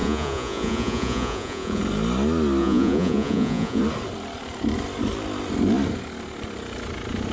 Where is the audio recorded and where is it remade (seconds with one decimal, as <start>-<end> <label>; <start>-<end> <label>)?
0.0-1.8 remade; 1.8-2.6 recorded; 2.6-3.8 remade; 3.8-7.3 recorded